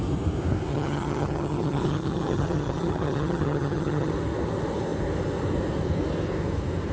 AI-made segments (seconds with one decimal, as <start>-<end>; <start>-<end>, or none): 0.7-4.1